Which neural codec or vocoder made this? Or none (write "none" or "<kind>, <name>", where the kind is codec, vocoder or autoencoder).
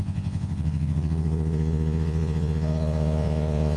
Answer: vocoder, Vocos